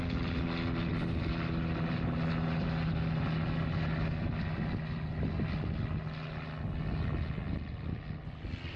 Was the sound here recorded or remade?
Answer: recorded